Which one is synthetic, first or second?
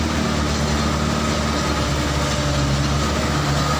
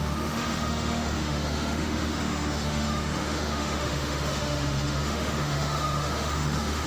second